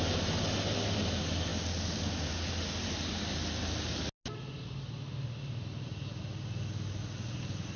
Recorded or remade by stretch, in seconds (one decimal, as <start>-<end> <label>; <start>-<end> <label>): 0.0-7.8 recorded